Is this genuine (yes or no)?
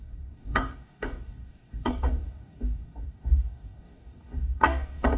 no